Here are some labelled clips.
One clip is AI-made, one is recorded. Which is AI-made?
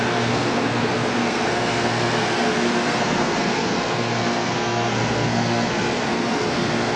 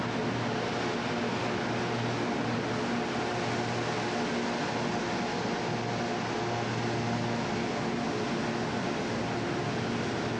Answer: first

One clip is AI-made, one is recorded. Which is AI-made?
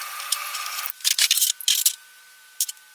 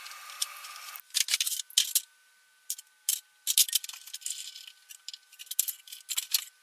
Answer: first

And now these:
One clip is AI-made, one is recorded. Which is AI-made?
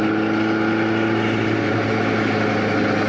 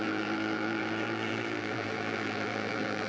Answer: second